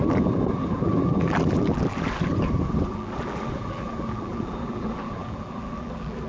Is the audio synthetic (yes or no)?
yes